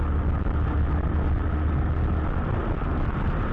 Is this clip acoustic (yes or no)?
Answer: yes